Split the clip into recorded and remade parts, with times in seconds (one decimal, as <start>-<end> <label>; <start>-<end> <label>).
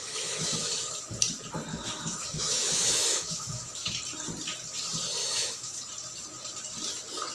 0.0-1.0 remade; 1.0-1.7 recorded; 1.7-3.9 remade; 3.9-5.2 recorded; 5.2-5.8 remade; 5.8-7.3 recorded